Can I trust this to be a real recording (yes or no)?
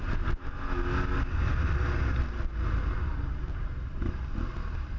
yes